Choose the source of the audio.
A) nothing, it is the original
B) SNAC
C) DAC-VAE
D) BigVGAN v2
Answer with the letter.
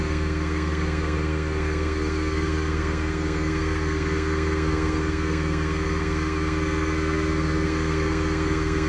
B